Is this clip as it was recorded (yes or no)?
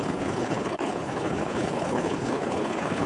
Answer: no